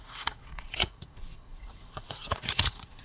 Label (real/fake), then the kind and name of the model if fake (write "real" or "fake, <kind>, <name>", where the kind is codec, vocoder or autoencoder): fake, vocoder, Vocos